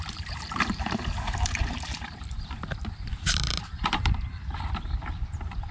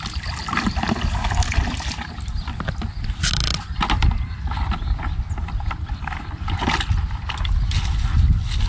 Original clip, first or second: second